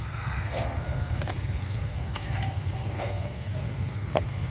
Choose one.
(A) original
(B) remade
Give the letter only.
B